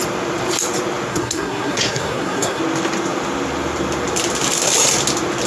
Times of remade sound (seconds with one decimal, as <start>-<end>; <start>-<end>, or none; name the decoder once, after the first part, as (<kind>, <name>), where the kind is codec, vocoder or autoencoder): 1.1-2.6 (codec, SNAC)